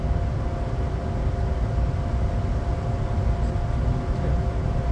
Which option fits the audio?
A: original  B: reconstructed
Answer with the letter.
A